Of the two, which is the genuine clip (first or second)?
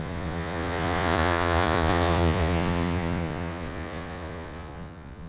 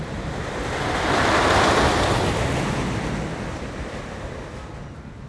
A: second